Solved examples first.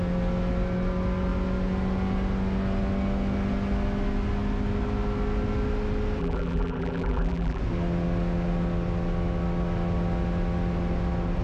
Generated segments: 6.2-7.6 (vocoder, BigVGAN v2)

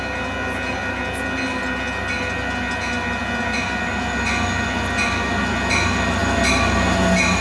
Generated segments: none

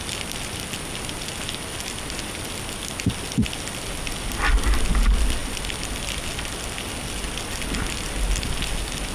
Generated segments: none

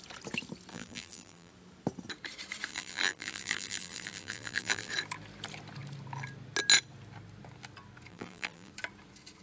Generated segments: 0.7-1.5 (vocoder, BigVGAN v2); 2.7-4.9; 8.1-8.7

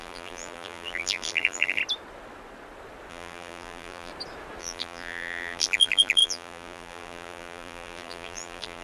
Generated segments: 0.0-1.8 (vocoder, BigVGAN v2); 3.1-4.1; 4.6-8.8